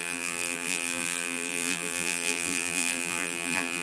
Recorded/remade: remade